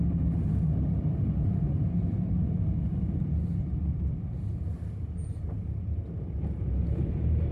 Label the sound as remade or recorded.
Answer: recorded